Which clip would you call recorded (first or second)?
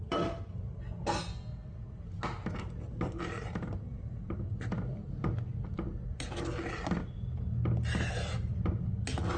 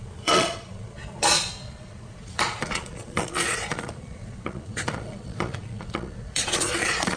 first